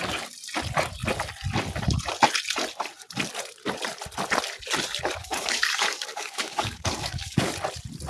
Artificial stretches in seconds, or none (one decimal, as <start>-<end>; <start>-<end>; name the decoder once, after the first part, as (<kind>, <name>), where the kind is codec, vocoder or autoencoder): 5.2-7.5 (codec, DAC)